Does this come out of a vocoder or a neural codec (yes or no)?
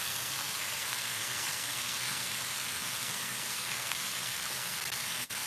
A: yes